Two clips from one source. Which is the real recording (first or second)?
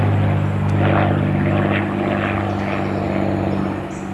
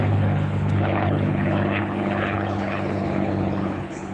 first